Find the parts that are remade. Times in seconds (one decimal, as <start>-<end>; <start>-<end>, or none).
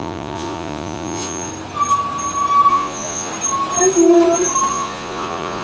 0.0-1.5; 2.7-3.3; 4.7-5.6